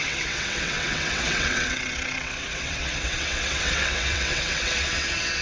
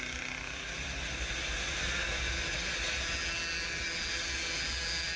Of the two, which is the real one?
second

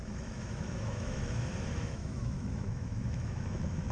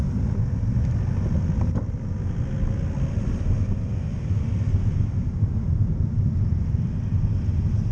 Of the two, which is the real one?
second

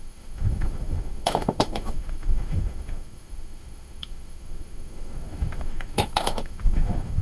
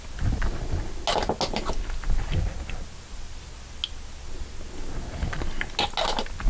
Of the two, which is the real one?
second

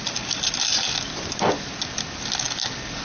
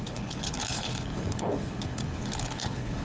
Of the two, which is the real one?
first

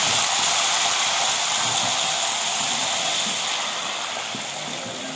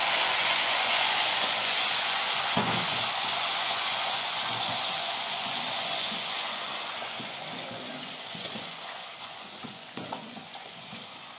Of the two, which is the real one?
first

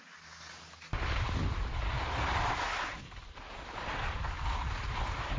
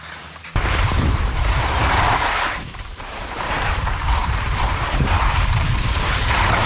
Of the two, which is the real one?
first